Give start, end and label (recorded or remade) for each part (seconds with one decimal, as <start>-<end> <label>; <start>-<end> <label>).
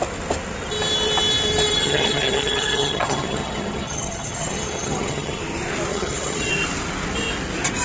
0.0-1.8 recorded; 1.8-5.4 remade; 5.4-5.9 recorded; 5.9-6.5 remade; 6.5-7.8 recorded